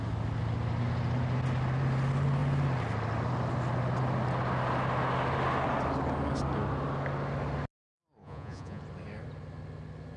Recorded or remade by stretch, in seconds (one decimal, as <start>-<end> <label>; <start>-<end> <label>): 0.0-8.2 recorded; 8.2-8.8 remade; 8.8-10.2 recorded